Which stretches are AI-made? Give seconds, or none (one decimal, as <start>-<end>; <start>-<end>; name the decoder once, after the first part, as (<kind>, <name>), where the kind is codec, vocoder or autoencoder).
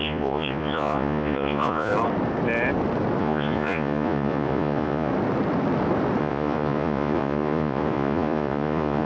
0.0-1.9 (vocoder, Vocos); 3.2-5.1; 6.2-9.0